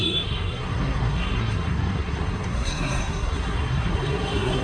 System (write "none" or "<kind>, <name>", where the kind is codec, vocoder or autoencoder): codec, SNAC